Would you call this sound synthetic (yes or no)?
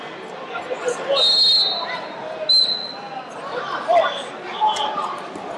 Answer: no